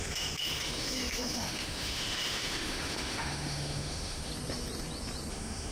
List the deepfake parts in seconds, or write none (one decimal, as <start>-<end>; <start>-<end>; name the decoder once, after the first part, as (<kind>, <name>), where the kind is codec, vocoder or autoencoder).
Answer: 0.0-4.3 (autoencoder, DAC-VAE); 5.3-5.7